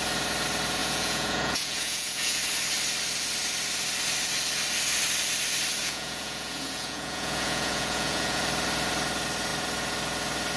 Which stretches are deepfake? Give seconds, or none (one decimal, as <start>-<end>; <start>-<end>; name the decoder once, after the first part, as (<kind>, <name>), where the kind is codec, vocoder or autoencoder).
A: 0.8-2.4 (vocoder, Vocos); 5.8-8.4